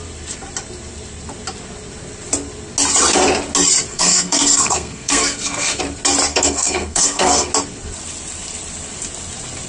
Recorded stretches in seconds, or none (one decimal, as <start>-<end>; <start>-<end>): 0.0-3.9; 5.8-6.3; 7.5-9.7